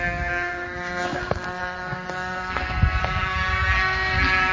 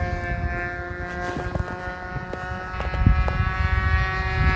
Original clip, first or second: second